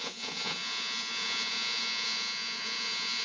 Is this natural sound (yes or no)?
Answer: no